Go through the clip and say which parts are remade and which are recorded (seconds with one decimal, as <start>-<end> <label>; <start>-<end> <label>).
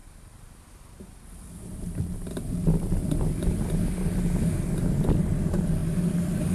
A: 0.0-6.5 recorded